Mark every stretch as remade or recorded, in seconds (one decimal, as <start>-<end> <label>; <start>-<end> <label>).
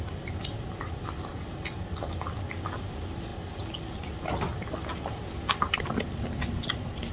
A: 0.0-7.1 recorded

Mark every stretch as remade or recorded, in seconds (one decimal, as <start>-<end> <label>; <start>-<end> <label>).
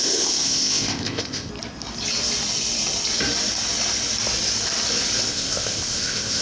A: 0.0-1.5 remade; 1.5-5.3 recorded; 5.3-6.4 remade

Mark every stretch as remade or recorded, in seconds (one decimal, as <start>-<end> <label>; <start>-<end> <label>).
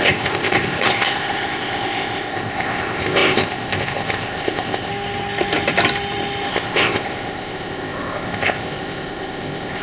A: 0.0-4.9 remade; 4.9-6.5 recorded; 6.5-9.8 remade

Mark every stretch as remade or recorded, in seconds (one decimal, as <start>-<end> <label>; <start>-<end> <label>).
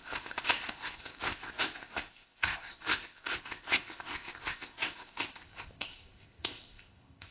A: 0.0-7.3 remade